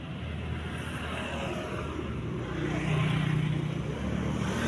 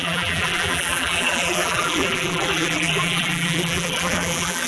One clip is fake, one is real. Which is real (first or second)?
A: first